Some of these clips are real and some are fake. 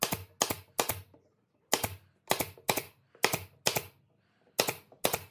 real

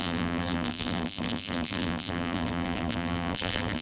fake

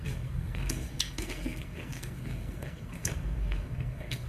fake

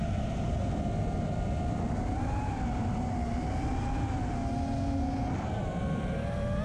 real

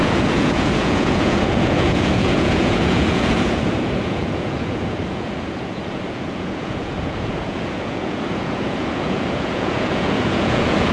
fake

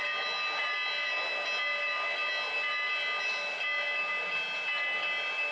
real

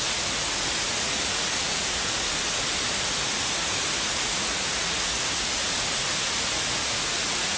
fake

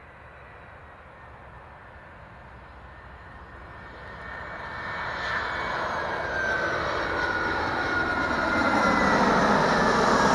real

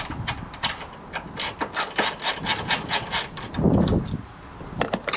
real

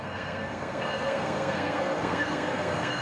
fake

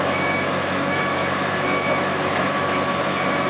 fake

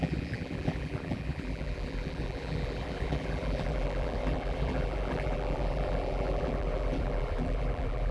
fake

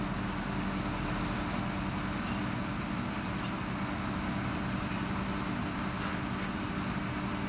real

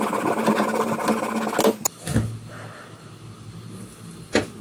real